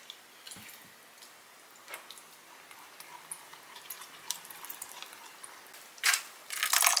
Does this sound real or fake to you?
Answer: real